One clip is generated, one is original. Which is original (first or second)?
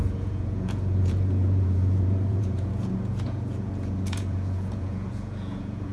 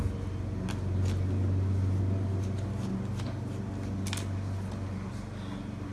second